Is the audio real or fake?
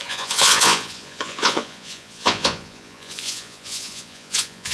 fake